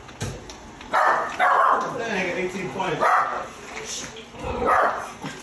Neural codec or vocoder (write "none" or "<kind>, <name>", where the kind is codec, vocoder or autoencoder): none